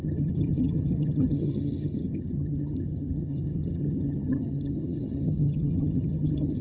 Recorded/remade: remade